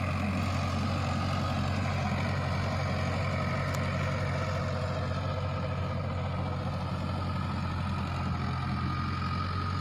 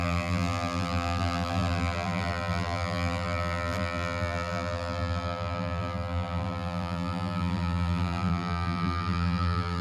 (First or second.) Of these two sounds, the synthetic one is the second